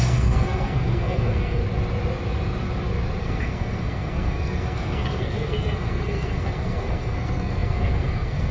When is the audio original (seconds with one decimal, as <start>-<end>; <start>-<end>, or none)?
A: 1.6-3.2